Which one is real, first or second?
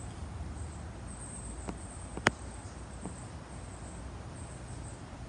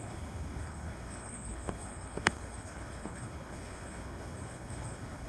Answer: first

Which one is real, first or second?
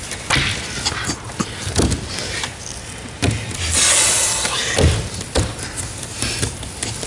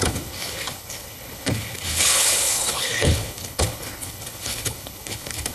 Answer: first